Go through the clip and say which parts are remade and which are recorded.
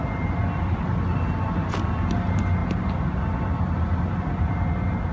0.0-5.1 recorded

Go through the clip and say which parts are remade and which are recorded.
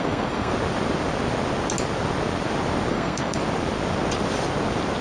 0.0-0.5 remade; 0.5-2.9 recorded; 2.9-3.4 remade; 3.4-5.0 recorded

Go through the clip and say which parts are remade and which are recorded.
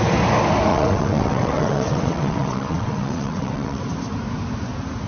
0.0-0.7 recorded; 0.7-3.8 remade; 3.8-5.1 recorded